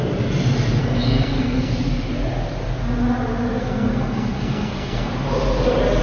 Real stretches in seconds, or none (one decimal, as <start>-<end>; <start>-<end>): 0.0-0.8; 1.7-3.6; 5.1-6.0